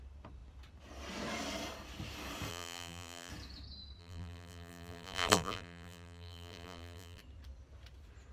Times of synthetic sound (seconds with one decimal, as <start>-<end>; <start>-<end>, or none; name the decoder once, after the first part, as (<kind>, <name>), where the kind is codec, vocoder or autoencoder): 2.5-3.3 (vocoder, BigVGAN v2); 4.0-7.2